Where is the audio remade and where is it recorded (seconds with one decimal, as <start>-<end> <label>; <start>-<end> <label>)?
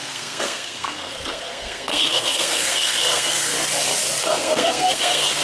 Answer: 0.0-3.5 remade; 3.5-4.2 recorded; 4.2-5.4 remade